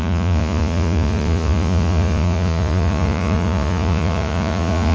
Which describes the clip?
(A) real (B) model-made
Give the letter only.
B